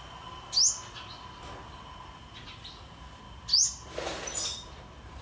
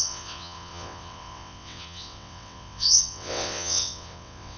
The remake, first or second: second